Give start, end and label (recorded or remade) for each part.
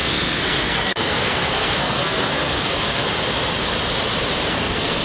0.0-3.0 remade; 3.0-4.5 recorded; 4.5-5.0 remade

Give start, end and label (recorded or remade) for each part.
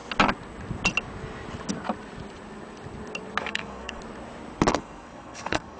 0.0-3.4 recorded; 3.4-4.0 remade; 4.0-4.7 recorded; 4.7-5.8 remade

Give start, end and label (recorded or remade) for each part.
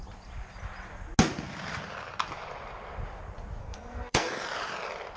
0.0-3.6 recorded; 3.6-4.3 remade; 4.3-5.2 recorded